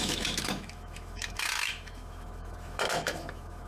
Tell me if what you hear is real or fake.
fake